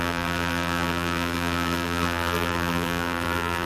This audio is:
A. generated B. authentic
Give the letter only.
A